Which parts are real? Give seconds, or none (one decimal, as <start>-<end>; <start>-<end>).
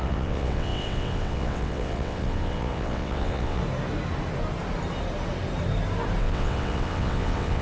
3.6-6.2